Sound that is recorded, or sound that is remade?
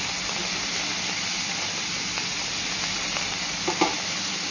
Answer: recorded